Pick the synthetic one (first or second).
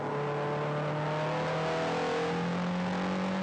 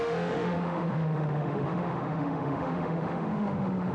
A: second